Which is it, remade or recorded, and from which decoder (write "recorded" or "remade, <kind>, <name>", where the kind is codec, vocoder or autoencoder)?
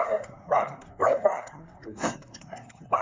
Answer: remade, codec, SNAC